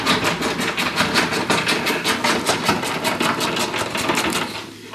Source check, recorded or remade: recorded